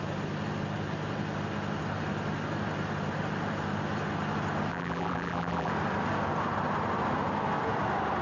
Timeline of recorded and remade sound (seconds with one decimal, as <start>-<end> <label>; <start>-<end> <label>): 0.0-4.7 recorded; 4.7-5.7 remade; 5.7-8.2 recorded